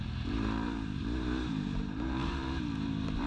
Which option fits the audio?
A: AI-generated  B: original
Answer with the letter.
A